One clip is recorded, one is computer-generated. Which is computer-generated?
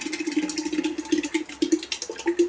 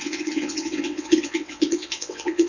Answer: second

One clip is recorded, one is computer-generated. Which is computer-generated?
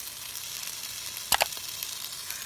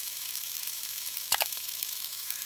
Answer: second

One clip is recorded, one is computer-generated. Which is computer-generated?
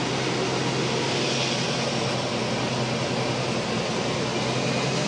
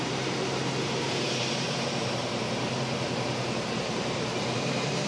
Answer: second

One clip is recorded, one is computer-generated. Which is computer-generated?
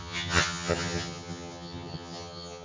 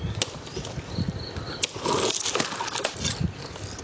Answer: first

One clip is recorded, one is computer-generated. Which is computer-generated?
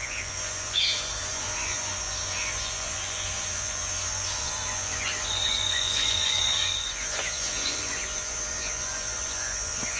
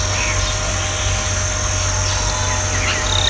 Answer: first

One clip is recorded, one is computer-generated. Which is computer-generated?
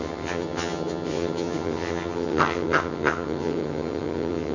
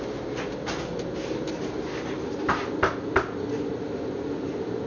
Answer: first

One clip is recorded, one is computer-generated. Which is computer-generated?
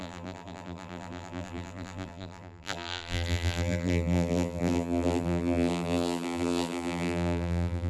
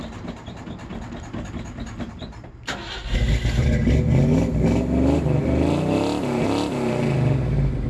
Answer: first